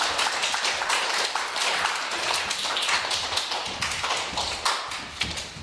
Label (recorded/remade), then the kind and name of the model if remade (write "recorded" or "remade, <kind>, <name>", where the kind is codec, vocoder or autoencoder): recorded